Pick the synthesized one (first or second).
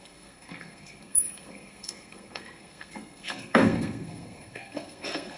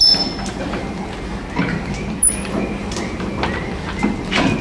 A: first